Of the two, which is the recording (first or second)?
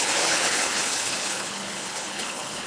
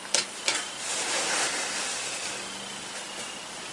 second